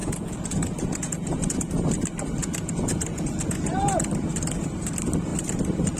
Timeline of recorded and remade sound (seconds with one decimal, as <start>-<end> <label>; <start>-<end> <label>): 0.0-1.7 remade; 1.7-2.4 recorded; 2.4-4.1 remade; 4.1-6.0 recorded